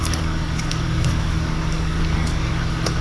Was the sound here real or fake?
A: fake